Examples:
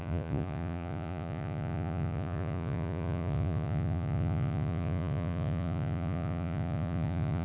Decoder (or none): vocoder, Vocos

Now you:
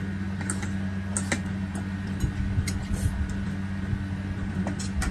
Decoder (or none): none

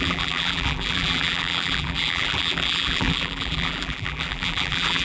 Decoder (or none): vocoder, BigVGAN v2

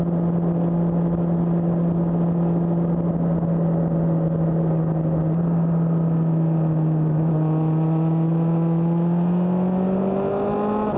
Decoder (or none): none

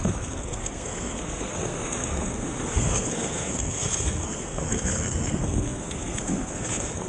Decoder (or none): codec, SNAC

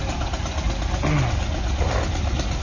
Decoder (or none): none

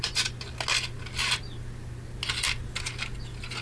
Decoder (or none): none